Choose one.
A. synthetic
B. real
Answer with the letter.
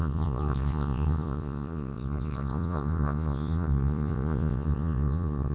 A